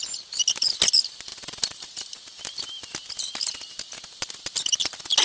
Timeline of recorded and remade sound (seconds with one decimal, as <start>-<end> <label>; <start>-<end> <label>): 0.0-1.3 recorded; 1.3-4.4 remade; 4.4-5.2 recorded